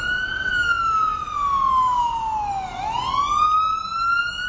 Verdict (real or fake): real